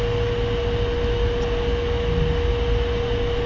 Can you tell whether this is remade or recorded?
recorded